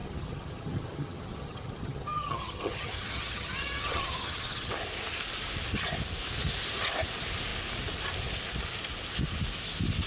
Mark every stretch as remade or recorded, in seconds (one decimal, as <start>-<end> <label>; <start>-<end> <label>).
0.0-4.7 remade; 4.7-10.1 recorded